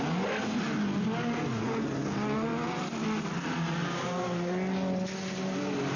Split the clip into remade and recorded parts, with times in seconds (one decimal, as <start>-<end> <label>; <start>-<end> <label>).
0.0-6.0 recorded